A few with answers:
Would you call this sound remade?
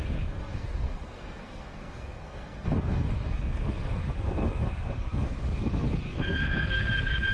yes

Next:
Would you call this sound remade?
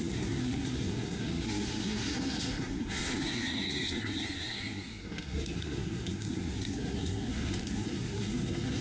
yes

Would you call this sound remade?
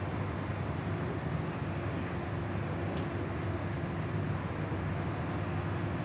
no